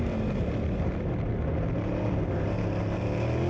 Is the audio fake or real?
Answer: real